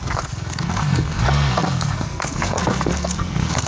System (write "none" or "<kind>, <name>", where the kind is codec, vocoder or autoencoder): codec, SNAC